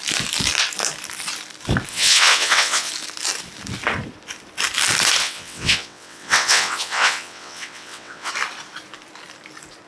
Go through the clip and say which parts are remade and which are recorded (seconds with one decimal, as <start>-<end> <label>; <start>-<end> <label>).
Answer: 0.0-1.9 recorded; 1.9-2.9 remade; 2.9-5.2 recorded; 5.2-8.3 remade; 8.3-9.9 recorded